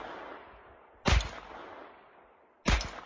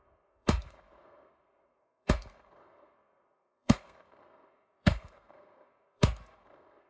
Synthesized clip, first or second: second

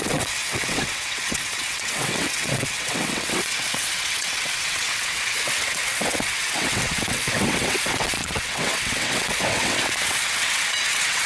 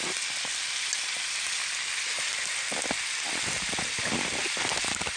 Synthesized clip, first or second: first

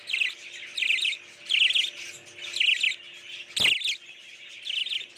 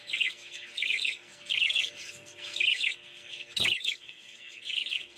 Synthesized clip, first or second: second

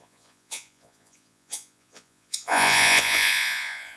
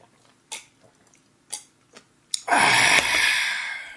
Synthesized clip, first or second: first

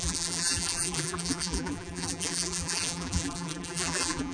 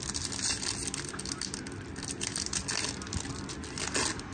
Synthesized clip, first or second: first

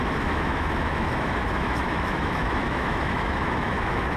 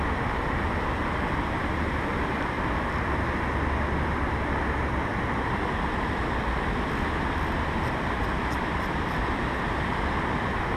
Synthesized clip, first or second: first